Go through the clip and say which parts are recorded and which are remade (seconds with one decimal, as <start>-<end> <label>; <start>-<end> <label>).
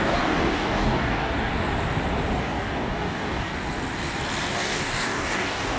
0.0-1.5 remade; 1.5-2.4 recorded; 2.4-3.5 remade; 3.5-4.5 recorded; 4.5-5.8 remade